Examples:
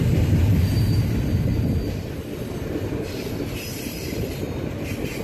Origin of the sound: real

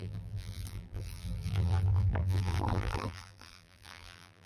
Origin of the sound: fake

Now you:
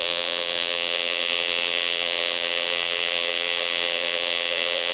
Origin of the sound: fake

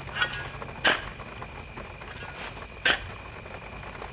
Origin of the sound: real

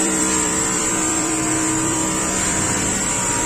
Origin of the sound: fake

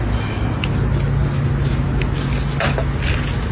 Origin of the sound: real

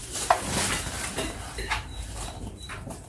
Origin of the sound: fake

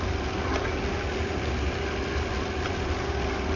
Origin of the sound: real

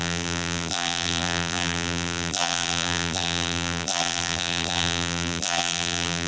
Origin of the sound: fake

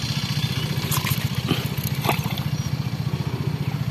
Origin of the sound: real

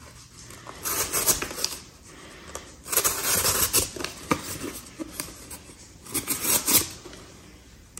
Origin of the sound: real